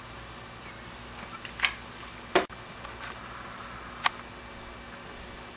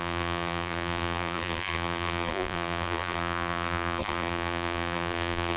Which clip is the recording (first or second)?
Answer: first